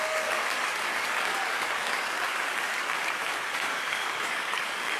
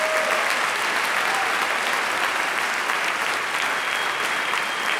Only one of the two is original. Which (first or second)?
second